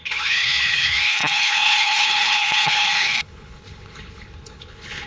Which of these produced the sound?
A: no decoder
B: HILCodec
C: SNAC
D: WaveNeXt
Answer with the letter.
B